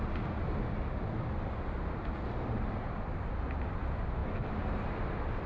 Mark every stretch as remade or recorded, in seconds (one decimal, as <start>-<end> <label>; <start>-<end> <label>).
0.0-5.5 recorded